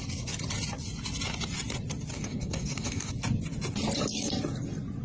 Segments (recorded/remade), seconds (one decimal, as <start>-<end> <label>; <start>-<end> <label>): 0.0-2.1 recorded; 2.1-3.1 remade; 3.1-5.0 recorded